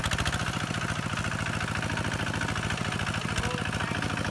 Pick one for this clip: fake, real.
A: real